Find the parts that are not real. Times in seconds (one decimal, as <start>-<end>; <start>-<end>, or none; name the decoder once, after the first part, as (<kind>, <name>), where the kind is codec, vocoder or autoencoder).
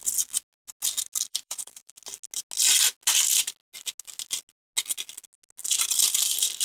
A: 1.3-1.9 (vocoder, BigVGAN v2)